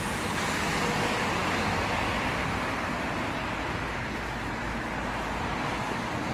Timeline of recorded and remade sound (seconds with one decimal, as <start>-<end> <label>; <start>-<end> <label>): 0.0-6.3 recorded